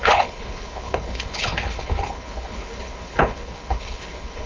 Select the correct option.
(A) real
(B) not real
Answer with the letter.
B